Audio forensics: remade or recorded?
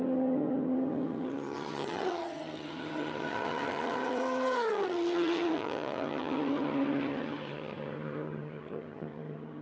remade